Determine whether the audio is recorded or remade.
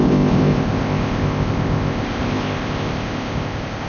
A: remade